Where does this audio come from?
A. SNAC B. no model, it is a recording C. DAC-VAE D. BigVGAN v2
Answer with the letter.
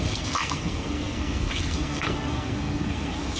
A